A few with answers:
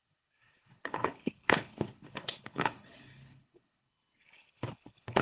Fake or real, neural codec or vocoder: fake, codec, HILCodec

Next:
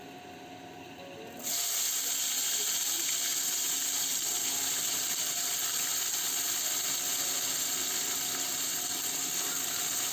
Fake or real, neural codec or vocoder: real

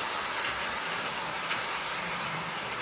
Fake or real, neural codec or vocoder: fake, vocoder, BigVGAN v2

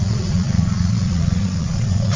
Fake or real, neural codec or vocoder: fake, vocoder, Vocos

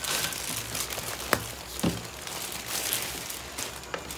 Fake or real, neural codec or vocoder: real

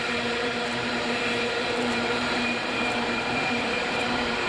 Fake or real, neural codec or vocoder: fake, vocoder, BigVGAN v2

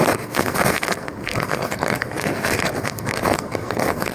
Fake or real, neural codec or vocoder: fake, codec, SNAC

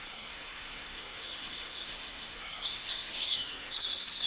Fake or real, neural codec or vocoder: fake, codec, SNAC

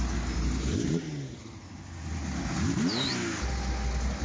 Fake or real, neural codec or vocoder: real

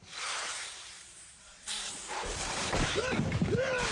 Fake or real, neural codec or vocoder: fake, vocoder, BigVGAN v2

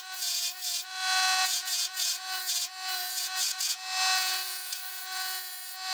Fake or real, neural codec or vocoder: fake, vocoder, Vocos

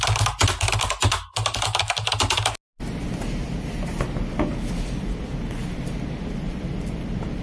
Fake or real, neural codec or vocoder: real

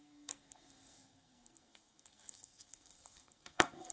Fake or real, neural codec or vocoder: fake, codec, SNAC